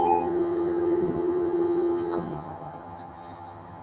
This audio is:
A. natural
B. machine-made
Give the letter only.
B